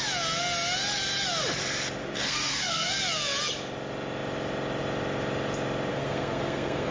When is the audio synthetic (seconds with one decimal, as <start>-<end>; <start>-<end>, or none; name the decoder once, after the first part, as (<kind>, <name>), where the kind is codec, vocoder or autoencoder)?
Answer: 2.0-2.9 (codec, SNAC); 5.9-6.9